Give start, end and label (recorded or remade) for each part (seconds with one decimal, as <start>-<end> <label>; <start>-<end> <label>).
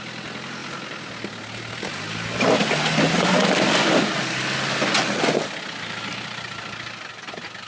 0.0-7.7 recorded